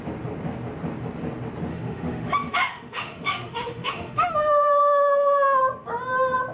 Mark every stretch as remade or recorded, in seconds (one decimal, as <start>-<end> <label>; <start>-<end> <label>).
0.0-1.7 recorded; 1.7-5.6 remade; 5.6-6.5 recorded